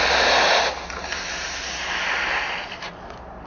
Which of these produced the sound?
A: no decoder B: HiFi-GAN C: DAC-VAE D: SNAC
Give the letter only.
A